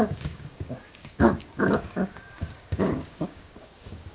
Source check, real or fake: fake